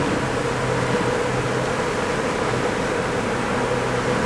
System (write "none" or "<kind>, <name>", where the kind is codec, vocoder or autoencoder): none